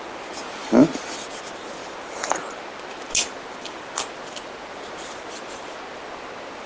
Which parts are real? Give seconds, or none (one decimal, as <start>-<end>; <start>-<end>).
0.0-6.7